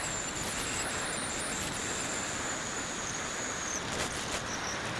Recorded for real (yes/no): no